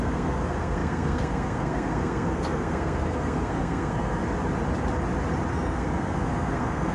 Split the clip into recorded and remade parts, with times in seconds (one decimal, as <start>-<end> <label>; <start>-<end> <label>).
0.0-4.2 remade; 4.2-5.5 recorded; 5.5-6.9 remade